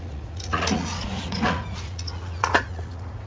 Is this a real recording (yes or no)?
no